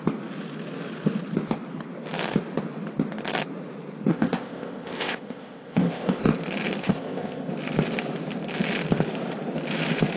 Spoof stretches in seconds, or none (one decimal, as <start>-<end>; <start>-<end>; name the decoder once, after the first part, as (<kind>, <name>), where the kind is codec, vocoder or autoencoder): 4.1-6.2 (codec, ZipCodec); 6.8-7.5